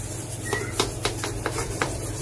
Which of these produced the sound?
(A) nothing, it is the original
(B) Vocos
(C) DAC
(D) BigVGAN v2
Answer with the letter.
D